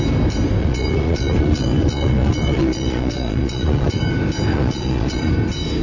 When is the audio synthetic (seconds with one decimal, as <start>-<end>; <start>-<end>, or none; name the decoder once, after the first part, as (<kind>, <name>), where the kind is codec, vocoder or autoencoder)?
0.6-4.0 (vocoder, Vocos); 4.5-5.3